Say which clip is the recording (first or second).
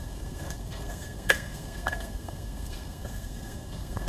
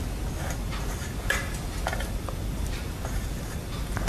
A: second